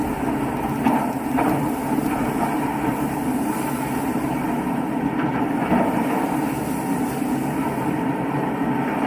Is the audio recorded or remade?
recorded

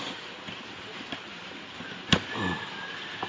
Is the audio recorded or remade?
remade